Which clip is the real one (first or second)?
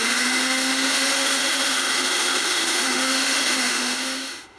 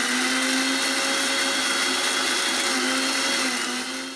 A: second